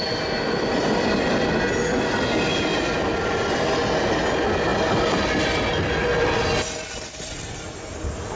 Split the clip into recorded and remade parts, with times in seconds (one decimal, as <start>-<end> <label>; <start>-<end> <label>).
0.0-8.4 recorded